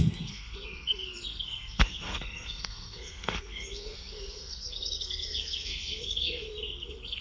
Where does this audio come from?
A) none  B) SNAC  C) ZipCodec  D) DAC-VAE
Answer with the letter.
B